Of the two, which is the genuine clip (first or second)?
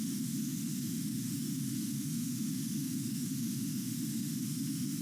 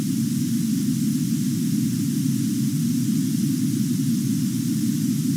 second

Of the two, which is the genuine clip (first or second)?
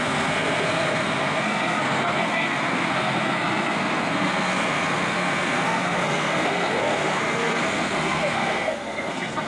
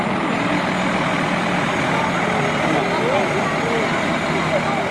second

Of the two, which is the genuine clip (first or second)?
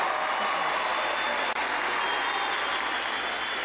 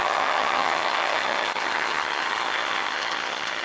first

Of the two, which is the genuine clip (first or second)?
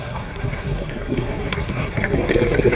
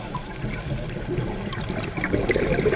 second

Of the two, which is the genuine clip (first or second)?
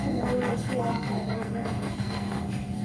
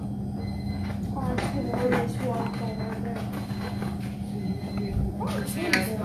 second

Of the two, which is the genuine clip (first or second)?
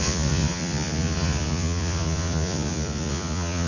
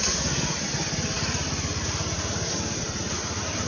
second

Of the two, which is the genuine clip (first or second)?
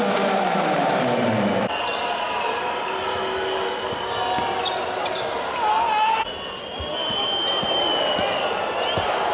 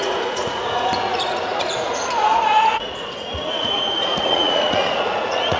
first